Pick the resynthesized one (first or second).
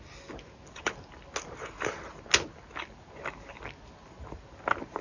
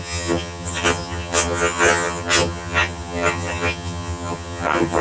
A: second